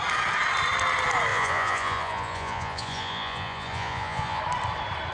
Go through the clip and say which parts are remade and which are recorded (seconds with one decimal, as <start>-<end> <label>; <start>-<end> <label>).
0.0-1.3 recorded; 1.3-4.4 remade; 4.4-5.1 recorded